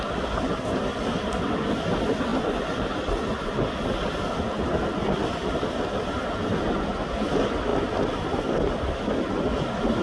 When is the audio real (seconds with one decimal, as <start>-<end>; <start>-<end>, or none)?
0.0-10.0